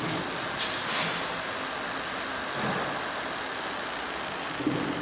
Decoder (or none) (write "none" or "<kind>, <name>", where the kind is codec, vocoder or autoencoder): none